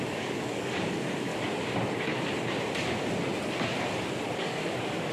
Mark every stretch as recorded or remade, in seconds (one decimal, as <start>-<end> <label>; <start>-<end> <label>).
0.0-1.3 remade; 1.3-4.4 recorded; 4.4-5.1 remade